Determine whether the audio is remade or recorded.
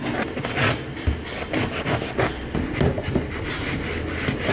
recorded